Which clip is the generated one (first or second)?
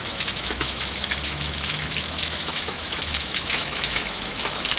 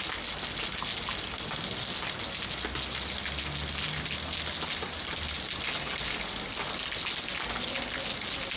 first